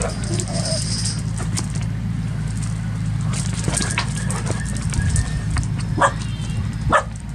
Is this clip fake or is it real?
real